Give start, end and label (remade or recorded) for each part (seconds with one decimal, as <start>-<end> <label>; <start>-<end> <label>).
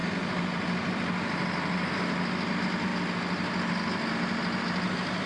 0.0-5.3 recorded